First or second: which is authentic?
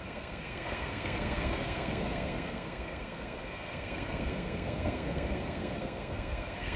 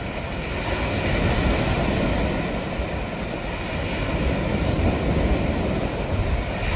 second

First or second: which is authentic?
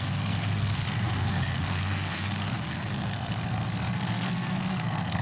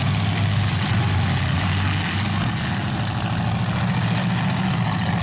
second